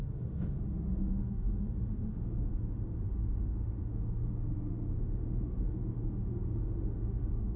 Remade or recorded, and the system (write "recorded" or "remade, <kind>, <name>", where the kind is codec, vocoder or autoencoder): remade, autoencoder, DAC-VAE